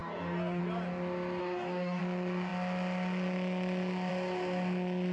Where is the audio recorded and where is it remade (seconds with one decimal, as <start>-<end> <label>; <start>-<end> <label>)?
0.0-0.6 remade; 0.6-1.4 recorded; 1.4-2.0 remade; 2.0-5.1 recorded